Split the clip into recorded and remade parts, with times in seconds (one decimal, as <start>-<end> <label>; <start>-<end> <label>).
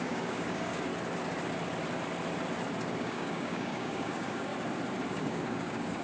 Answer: 0.0-0.9 remade; 0.9-3.0 recorded; 3.0-4.5 remade; 4.5-5.1 recorded; 5.1-6.0 remade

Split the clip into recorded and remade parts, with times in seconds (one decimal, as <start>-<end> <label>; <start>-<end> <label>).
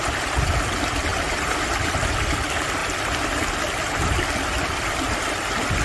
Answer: 0.0-2.8 recorded; 2.8-3.4 remade; 3.4-5.8 recorded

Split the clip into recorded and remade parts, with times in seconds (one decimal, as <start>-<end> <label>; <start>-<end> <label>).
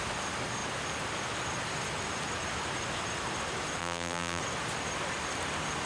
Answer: 0.0-3.8 recorded; 3.8-4.4 remade; 4.4-5.9 recorded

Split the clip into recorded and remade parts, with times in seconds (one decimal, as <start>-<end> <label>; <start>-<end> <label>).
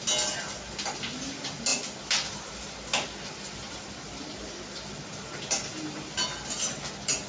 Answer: 0.0-7.3 recorded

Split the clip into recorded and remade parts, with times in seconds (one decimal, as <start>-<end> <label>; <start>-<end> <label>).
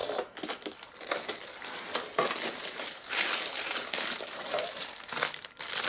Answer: 0.0-2.6 recorded; 2.6-4.9 remade; 4.9-5.9 recorded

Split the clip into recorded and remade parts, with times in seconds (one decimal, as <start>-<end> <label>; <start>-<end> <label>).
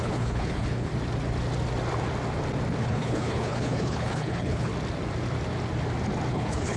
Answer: 0.0-0.9 remade; 0.9-2.8 recorded; 2.8-4.7 remade; 4.7-6.3 recorded; 6.3-6.8 remade